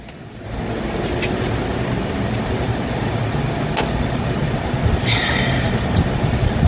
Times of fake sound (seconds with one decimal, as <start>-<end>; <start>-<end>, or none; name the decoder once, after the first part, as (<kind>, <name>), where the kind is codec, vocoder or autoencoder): none